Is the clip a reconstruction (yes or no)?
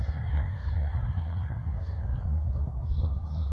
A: yes